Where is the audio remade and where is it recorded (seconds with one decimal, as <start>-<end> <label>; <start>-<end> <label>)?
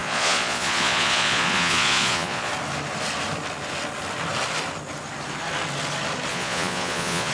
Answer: 0.0-2.5 remade; 2.5-6.3 recorded; 6.3-7.3 remade